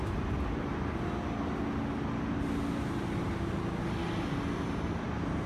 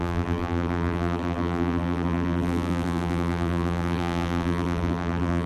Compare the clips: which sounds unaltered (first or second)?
first